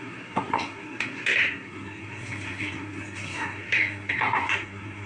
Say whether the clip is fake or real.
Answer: fake